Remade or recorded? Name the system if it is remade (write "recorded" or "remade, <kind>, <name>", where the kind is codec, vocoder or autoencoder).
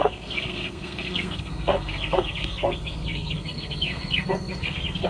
remade, codec, SNAC